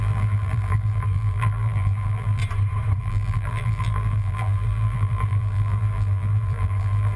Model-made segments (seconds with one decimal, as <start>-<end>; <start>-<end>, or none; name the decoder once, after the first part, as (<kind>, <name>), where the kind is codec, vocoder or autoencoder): 0.0-2.4 (vocoder, BigVGAN v2); 3.0-7.2